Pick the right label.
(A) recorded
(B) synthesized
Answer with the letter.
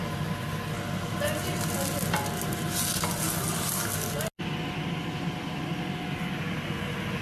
A